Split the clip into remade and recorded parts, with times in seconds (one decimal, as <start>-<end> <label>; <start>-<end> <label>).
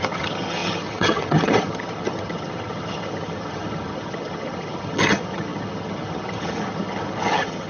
0.0-7.7 remade